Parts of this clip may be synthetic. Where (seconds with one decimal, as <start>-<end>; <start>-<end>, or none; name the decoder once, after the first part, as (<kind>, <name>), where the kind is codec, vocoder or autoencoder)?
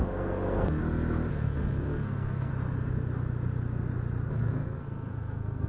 0.0-0.8 (codec, SNAC); 1.3-2.5; 4.3-5.7